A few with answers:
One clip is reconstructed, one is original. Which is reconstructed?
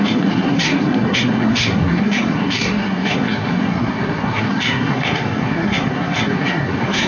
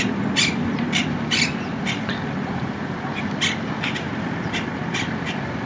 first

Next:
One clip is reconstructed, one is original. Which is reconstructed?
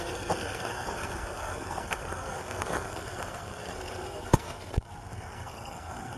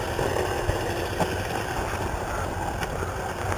first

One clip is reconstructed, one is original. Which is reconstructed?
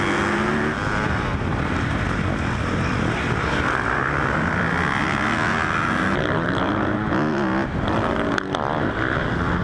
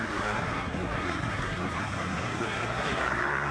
second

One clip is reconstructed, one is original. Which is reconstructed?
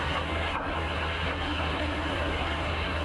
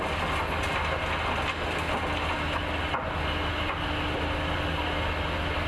first